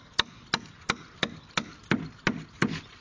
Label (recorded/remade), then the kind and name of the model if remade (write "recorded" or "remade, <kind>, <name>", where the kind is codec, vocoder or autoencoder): recorded